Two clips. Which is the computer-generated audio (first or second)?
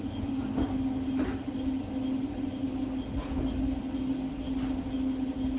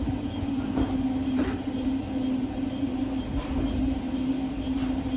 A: second